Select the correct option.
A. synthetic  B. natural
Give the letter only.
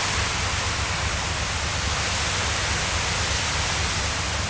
B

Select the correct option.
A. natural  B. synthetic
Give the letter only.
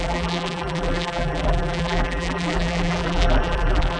B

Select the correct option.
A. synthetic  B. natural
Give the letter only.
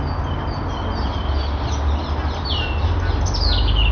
B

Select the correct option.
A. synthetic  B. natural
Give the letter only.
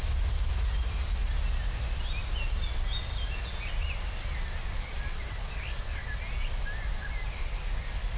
B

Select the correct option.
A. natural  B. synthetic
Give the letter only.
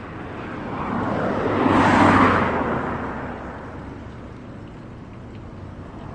A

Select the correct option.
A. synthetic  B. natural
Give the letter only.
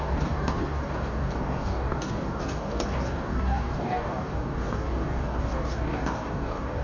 A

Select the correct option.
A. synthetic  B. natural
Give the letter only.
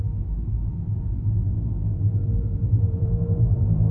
A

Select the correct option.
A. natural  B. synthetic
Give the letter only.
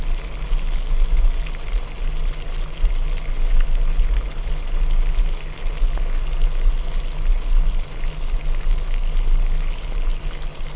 A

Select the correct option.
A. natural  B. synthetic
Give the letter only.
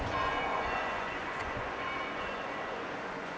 B